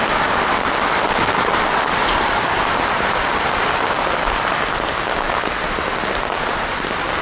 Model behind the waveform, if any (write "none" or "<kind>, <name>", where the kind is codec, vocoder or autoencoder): none